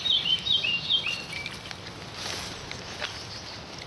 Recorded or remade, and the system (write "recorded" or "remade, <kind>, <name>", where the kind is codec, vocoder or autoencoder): recorded